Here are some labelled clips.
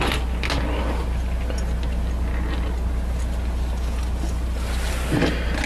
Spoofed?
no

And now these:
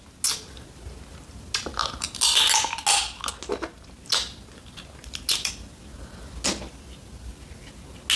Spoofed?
no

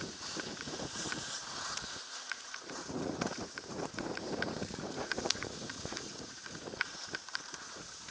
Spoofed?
yes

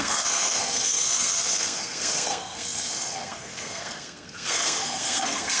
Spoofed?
yes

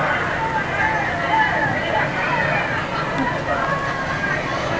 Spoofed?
no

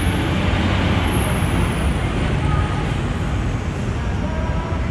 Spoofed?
no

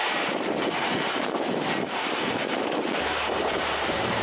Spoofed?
yes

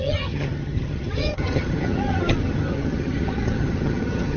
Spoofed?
yes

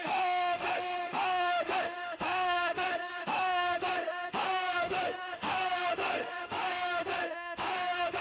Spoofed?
yes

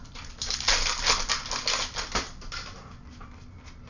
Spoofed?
no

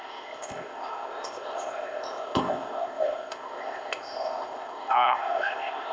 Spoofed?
yes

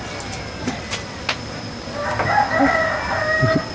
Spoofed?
no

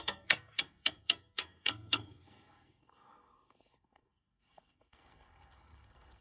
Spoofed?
yes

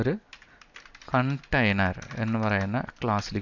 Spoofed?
no